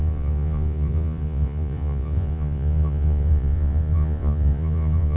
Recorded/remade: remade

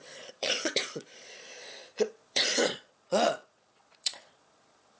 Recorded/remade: remade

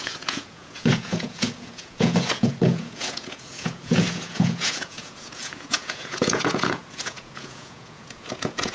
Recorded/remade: remade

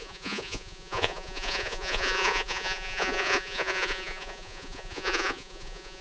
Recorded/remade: remade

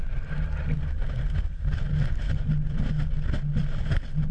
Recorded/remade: recorded